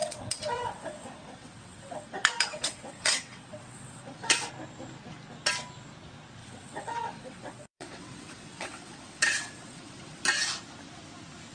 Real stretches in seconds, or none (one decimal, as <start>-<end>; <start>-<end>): 4.5-6.4; 10.2-11.5